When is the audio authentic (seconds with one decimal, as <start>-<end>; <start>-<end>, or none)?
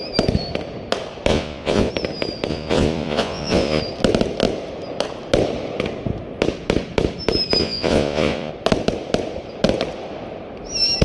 0.0-1.3; 1.9-2.5; 3.8-7.6; 8.5-11.0